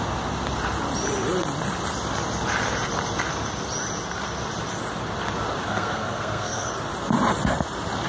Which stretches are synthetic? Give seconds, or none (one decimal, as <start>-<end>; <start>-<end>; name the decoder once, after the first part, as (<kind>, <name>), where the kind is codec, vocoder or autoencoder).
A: 5.6-6.7 (codec, SNAC)